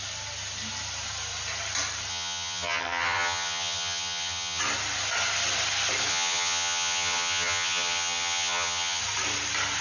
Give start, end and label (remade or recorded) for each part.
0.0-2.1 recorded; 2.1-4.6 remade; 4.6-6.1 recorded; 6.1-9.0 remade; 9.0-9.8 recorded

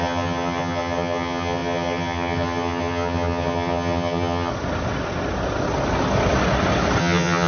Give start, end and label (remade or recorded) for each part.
0.0-4.5 remade; 4.5-7.0 recorded; 7.0-7.5 remade

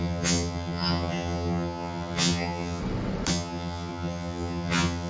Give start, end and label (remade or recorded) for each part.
0.0-2.8 remade; 2.8-3.3 recorded; 3.3-5.1 remade

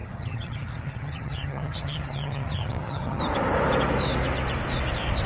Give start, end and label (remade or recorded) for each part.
0.0-3.2 remade; 3.2-5.3 recorded

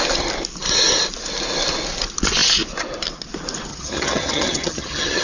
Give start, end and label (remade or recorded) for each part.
0.0-3.7 recorded; 3.7-5.2 remade

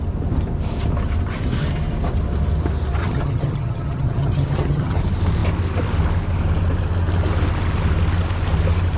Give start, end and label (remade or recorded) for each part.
0.0-3.0 recorded; 3.0-5.0 remade; 5.0-9.0 recorded